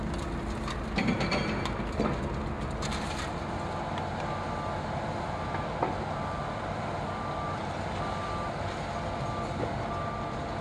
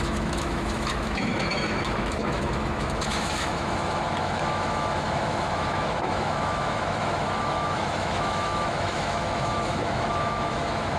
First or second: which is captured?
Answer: first